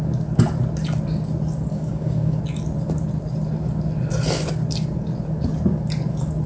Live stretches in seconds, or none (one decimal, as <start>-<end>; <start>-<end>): 0.0-1.7; 2.4-6.5

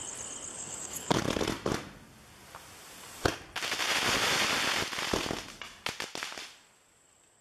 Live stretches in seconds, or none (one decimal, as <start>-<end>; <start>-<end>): 0.0-0.5; 1.2-7.4